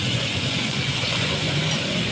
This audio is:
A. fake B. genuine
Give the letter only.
A